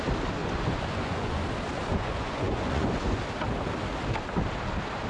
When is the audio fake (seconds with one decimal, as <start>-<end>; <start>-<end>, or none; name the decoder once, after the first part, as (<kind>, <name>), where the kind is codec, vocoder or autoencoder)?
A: 0.4-1.4 (vocoder, Vocos); 1.9-3.2